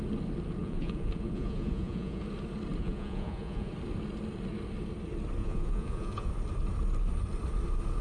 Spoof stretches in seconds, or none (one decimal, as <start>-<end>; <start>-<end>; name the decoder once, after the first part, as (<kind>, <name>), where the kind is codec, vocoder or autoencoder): 0.6-2.2 (vocoder, Vocos); 2.8-3.7; 5.4-6.3